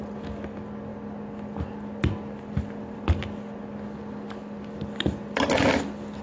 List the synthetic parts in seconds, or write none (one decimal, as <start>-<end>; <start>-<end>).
none